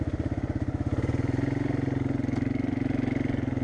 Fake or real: real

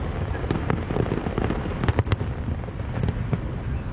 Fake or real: real